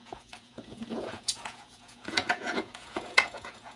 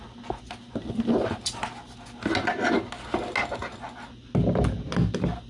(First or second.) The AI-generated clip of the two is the first